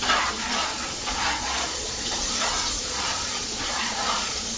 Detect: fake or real fake